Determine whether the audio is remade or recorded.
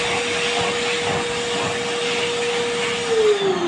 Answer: recorded